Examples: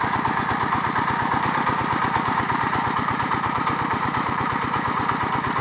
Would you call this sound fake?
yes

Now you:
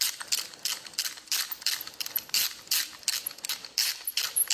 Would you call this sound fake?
yes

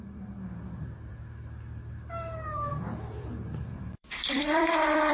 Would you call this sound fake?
yes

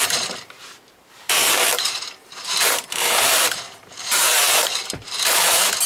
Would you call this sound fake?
yes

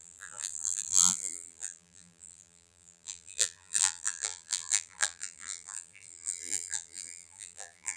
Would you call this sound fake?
yes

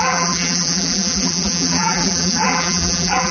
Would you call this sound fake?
yes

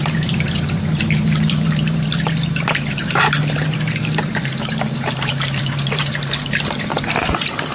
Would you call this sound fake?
yes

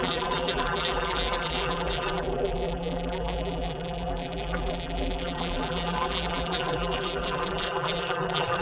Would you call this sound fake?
yes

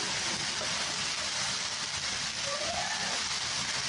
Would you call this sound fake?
no